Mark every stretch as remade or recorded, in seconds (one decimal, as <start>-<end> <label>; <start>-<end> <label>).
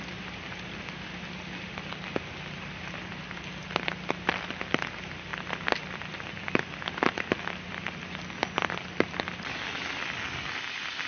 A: 0.0-11.1 recorded